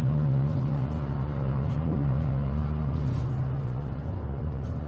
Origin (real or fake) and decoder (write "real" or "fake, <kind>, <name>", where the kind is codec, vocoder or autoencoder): fake, vocoder, Vocos